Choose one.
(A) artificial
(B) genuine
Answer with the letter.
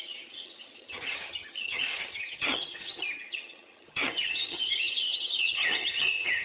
A